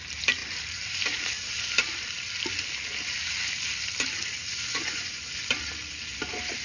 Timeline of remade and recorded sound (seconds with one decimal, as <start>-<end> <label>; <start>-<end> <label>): 0.0-4.7 recorded; 4.7-5.3 remade; 5.3-6.6 recorded